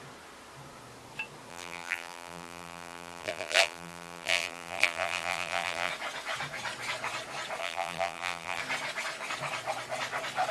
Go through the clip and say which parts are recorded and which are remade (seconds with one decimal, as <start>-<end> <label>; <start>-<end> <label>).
0.0-1.5 recorded; 1.5-5.9 remade; 5.9-7.6 recorded; 7.6-8.6 remade; 8.6-10.5 recorded